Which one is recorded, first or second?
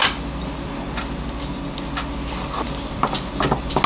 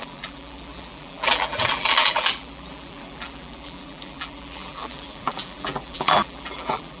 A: first